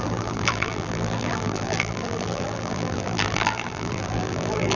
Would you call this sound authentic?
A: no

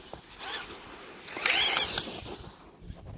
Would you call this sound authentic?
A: yes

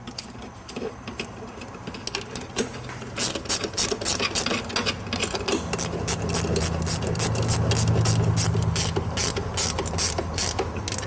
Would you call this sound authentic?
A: yes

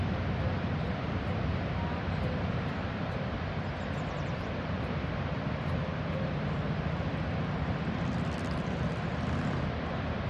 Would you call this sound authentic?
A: no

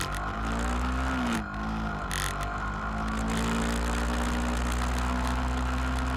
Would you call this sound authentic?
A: yes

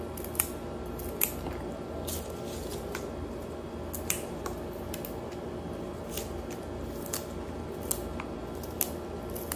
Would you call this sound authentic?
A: yes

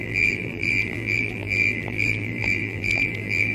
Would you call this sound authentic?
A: no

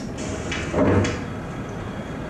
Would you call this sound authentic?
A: yes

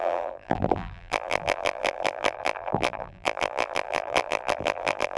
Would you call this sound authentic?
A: no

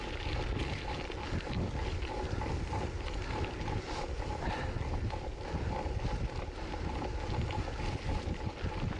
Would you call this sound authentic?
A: yes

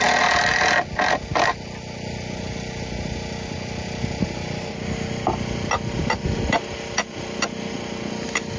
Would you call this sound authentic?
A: yes